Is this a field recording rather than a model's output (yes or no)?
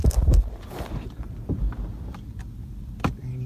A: no